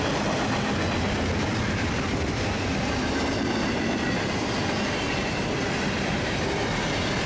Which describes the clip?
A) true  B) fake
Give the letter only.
A